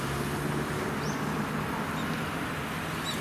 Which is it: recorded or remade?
recorded